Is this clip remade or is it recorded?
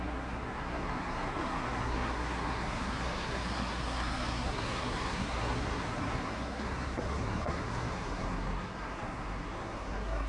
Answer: remade